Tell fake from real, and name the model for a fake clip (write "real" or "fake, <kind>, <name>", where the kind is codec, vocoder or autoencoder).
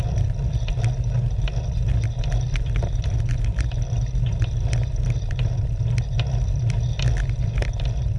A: real